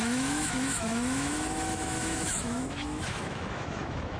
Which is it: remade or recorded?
remade